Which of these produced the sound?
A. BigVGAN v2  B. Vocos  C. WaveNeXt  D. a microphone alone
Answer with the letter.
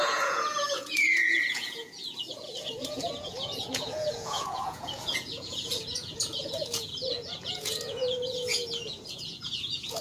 B